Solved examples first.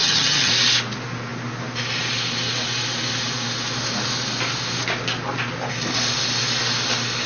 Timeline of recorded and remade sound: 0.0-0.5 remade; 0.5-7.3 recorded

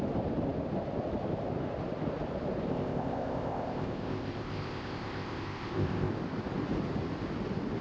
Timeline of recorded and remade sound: 0.0-2.7 recorded; 2.7-6.1 remade; 6.1-7.8 recorded